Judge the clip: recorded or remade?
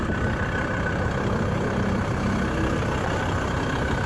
recorded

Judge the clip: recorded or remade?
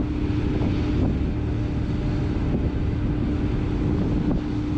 recorded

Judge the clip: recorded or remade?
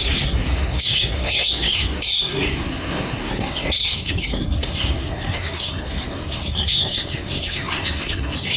remade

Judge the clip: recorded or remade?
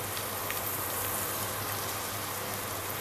recorded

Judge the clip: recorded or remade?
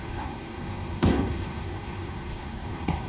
remade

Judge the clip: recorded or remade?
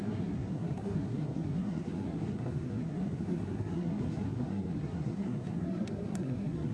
remade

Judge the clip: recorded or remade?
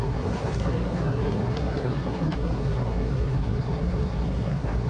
remade